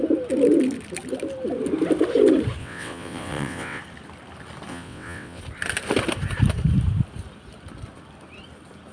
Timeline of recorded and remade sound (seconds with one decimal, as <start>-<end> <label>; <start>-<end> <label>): 0.0-2.6 recorded; 2.6-3.8 remade; 3.8-4.7 recorded; 4.7-5.4 remade; 5.4-8.9 recorded